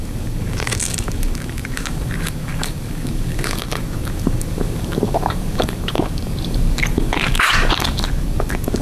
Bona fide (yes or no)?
no